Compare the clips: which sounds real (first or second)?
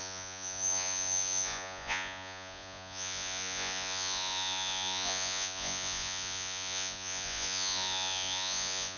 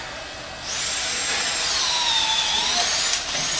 second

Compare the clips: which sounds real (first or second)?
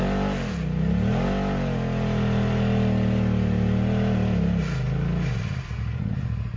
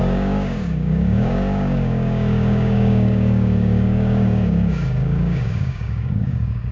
first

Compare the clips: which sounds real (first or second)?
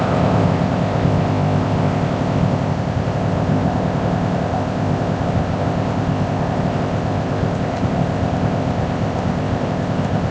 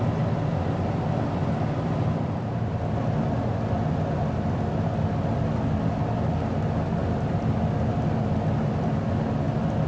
second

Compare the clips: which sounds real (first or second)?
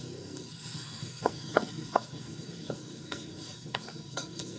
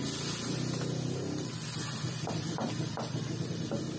second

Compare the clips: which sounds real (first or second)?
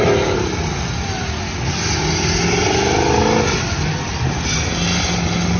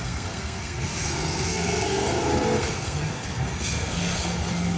first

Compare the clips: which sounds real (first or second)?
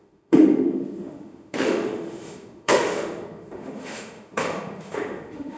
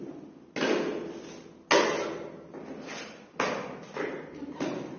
second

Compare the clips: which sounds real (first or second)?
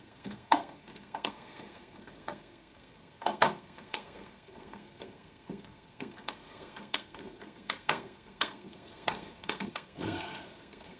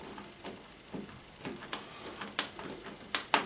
second